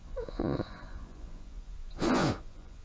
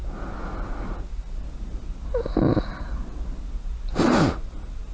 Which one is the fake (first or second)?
first